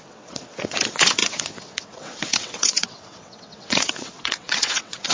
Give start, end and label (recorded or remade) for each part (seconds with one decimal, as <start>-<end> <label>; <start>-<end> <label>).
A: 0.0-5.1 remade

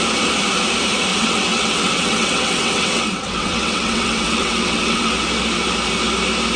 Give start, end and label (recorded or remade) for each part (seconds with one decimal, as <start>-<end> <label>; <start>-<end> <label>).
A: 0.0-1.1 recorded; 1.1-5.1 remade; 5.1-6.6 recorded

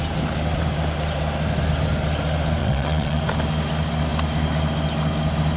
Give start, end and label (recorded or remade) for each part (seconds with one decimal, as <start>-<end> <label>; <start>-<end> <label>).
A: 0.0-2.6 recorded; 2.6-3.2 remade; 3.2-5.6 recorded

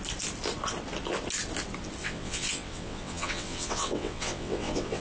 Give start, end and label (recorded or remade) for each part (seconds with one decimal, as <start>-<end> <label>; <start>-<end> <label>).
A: 0.0-2.0 recorded; 2.0-5.0 remade

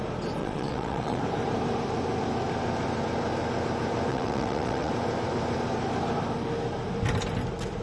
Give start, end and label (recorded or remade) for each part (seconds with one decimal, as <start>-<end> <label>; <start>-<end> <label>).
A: 0.0-0.4 recorded; 0.4-1.2 remade; 1.2-4.1 recorded; 4.1-4.9 remade; 4.9-7.8 recorded

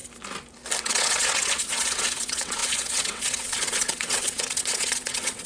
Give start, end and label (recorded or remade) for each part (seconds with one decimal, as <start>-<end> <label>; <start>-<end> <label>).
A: 0.0-0.8 recorded; 0.8-5.5 remade